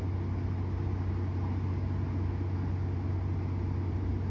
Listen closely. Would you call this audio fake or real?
real